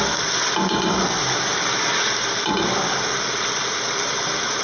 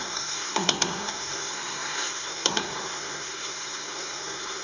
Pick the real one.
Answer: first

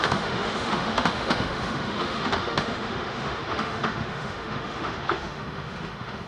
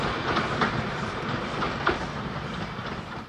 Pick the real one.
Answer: second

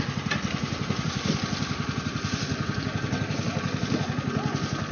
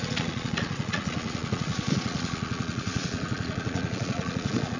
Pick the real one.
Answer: first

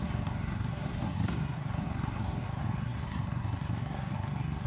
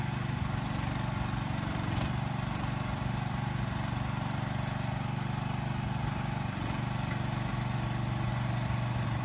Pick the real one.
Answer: second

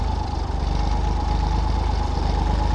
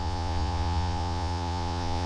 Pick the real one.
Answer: first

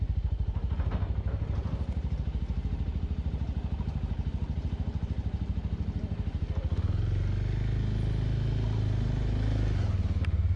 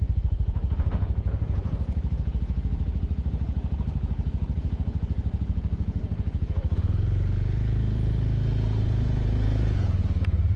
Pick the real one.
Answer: first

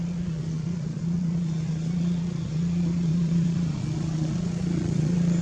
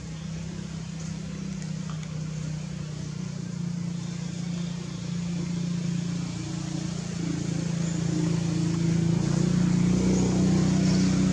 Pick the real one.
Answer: second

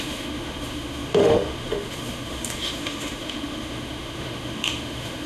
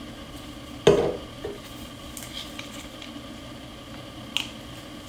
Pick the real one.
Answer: second